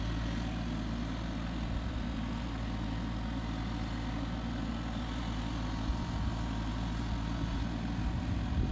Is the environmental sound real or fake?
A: real